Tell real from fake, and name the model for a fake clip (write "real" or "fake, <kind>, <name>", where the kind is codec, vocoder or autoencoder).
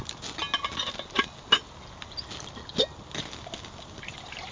real